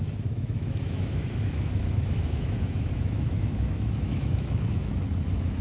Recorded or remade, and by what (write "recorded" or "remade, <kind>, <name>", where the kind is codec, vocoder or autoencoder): remade, autoencoder, DAC-VAE